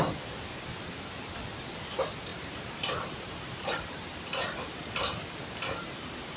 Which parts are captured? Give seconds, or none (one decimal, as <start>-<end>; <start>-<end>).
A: 0.0-2.3